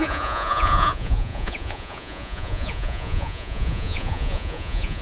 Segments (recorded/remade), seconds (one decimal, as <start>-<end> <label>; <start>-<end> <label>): 0.0-5.0 remade